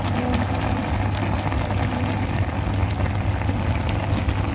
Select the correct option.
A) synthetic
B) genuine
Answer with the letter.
B